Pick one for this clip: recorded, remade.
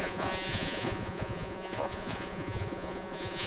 remade